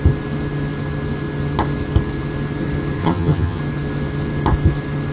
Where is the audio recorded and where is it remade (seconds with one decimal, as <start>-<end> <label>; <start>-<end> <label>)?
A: 0.0-3.0 recorded; 3.0-3.6 remade; 3.6-5.1 recorded